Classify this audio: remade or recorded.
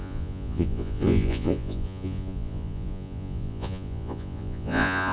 remade